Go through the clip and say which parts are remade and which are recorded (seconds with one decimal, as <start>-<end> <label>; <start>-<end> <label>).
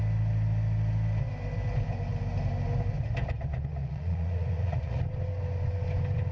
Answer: 0.0-3.8 recorded; 3.8-5.0 remade; 5.0-6.3 recorded